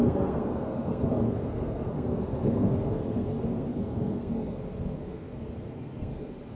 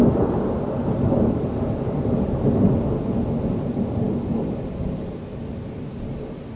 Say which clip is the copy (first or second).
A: first